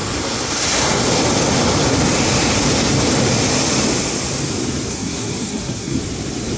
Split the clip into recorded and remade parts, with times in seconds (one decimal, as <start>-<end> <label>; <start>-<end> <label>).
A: 0.0-4.9 recorded; 4.9-6.0 remade; 6.0-6.6 recorded